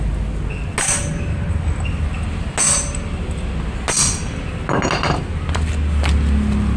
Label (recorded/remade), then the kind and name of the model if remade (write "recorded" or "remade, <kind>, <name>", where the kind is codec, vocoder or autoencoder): recorded